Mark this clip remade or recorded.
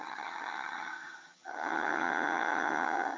remade